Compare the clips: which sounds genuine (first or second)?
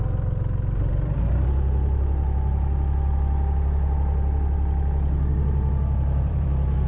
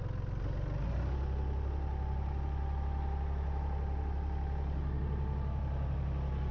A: second